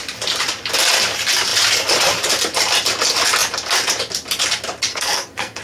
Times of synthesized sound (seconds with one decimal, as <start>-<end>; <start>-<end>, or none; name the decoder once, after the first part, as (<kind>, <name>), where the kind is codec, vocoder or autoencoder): 4.9-5.6 (codec, SNAC)